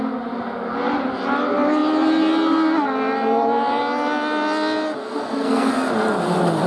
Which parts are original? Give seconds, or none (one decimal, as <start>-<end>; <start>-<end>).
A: 0.0-5.0; 5.7-6.7

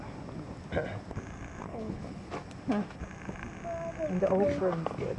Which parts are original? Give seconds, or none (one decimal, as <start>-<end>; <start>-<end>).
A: 0.0-1.7; 2.3-5.2

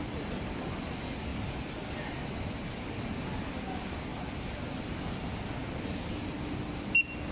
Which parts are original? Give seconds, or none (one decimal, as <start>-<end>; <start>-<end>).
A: 0.0-7.3

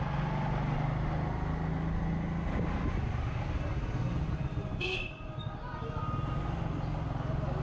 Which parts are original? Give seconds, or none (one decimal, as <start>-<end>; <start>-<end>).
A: 0.0-4.6; 5.1-7.6